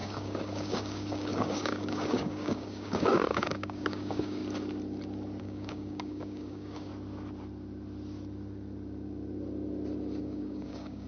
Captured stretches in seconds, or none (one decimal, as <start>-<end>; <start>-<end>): 4.4-5.4; 6.9-10.2